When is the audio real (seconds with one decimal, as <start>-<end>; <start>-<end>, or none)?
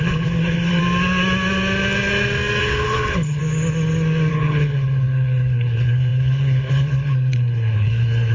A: 0.8-2.6; 3.4-4.3